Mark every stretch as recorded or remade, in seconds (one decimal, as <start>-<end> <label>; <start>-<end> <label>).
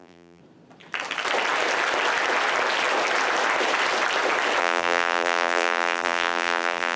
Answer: 0.0-0.4 remade; 0.4-4.6 recorded; 4.6-7.0 remade